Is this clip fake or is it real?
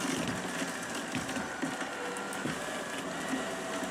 real